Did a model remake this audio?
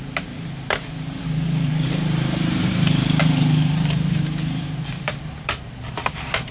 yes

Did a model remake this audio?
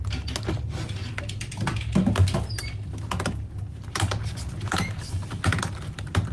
no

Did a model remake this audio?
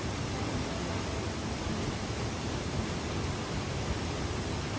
no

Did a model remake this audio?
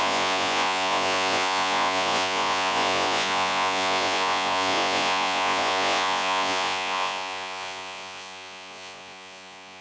yes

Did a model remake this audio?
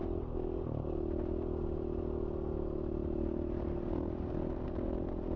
no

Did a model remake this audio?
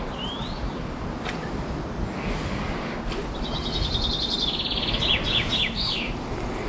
no